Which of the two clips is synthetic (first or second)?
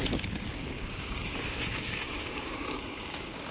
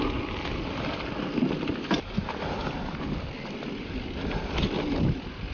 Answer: first